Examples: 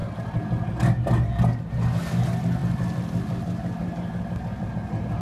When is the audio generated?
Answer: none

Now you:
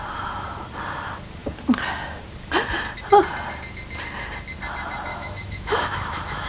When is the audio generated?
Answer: 5.1-6.5 (autoencoder, DAC-VAE)

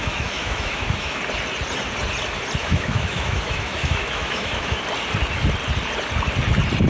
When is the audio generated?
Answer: 0.0-1.2 (autoencoder, DAC-VAE); 2.6-4.8

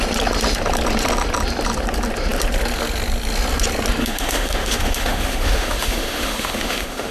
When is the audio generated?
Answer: 4.0-7.1 (autoencoder, DAC-VAE)

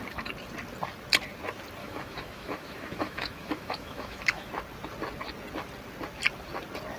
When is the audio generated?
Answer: 1.8-4.5 (autoencoder, DAC-VAE)

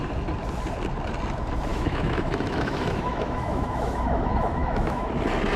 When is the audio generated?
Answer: 1.7-5.1 (autoencoder, DAC-VAE)

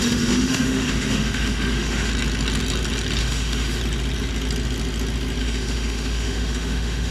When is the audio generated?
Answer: 0.0-2.1 (autoencoder, DAC-VAE); 3.2-3.8; 5.4-7.1

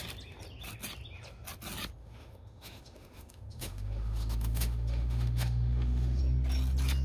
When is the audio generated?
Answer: 2.0-6.2 (autoencoder, DAC-VAE)